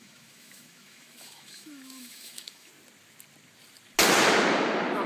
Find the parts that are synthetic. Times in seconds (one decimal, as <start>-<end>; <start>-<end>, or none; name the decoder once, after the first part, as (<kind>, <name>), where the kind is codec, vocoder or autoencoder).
0.0-2.7 (autoencoder, DAC-VAE)